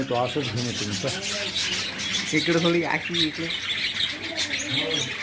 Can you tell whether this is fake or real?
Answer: real